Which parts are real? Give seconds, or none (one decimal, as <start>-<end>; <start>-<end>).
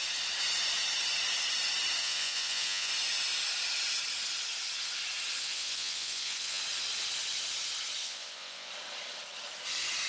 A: 0.0-2.0; 2.9-5.4; 6.6-8.0; 8.7-10.1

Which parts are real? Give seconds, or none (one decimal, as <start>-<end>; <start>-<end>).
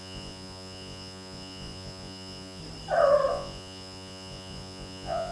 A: 2.6-3.3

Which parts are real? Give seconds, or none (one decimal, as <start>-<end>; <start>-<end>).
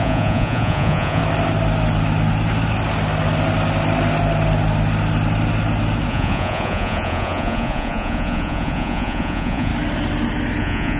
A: 1.2-6.1; 9.7-10.6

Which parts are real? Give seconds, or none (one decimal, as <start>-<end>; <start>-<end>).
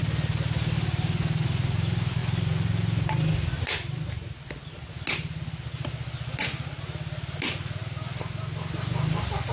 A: 0.0-9.5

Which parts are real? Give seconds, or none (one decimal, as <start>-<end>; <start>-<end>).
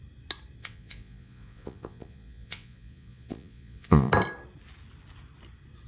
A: 0.0-0.6; 4.1-5.9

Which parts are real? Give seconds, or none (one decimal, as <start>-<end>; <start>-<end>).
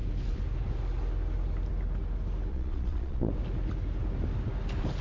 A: 0.0-2.5; 3.3-5.0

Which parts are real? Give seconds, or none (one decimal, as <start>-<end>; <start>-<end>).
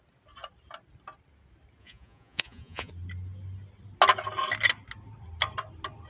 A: 0.0-1.8; 2.9-6.1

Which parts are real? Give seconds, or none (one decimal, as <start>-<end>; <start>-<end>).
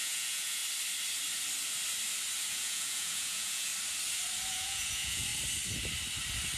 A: 0.6-2.5; 3.7-4.5; 5.3-6.6